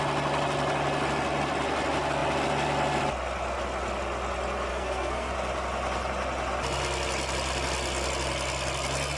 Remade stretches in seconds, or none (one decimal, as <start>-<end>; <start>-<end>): 4.7-5.3